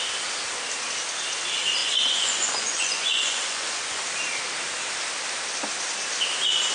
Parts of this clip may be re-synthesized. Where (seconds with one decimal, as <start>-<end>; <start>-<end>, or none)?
1.8-4.0